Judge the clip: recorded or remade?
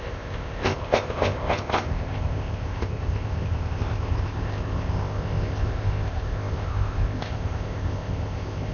remade